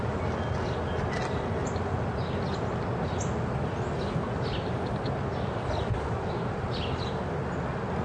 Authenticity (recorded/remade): recorded